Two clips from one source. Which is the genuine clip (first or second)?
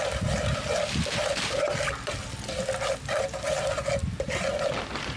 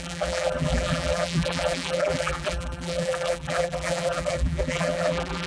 first